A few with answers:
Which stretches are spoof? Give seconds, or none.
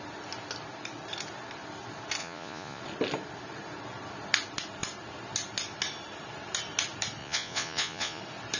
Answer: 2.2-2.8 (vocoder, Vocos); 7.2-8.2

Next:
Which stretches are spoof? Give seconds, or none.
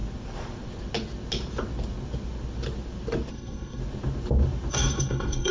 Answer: 3.3-3.8 (codec, SNAC); 4.7-5.5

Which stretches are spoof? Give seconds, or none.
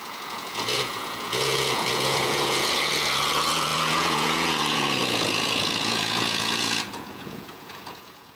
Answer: 0.0-8.4 (vocoder, Vocos)